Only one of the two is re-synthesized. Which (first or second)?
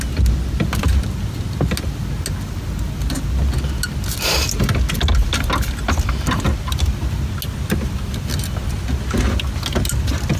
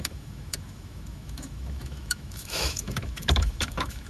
second